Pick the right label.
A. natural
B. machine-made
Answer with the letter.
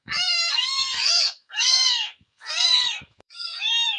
B